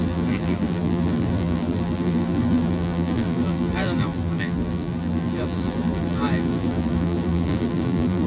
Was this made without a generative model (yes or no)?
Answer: no